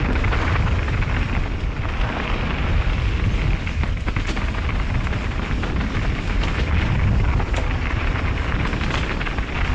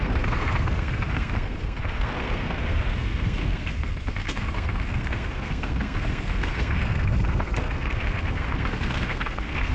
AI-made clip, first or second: second